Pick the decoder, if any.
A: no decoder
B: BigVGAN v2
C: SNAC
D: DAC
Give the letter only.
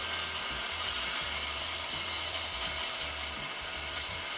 B